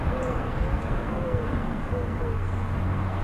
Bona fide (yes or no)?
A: no